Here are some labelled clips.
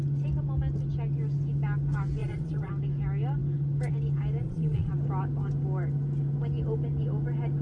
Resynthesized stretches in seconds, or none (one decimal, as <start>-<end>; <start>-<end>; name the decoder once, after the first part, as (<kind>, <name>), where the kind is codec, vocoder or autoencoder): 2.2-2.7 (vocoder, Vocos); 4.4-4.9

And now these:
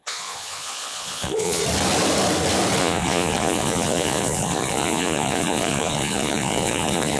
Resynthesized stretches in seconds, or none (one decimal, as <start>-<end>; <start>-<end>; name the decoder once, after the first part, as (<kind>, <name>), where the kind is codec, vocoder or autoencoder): 0.0-1.6 (vocoder, Vocos); 2.8-7.2

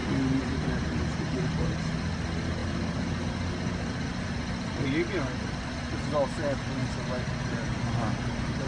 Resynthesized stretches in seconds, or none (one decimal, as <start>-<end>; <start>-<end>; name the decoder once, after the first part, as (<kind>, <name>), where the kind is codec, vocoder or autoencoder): none